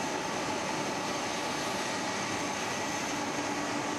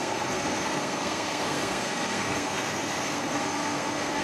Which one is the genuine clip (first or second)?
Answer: first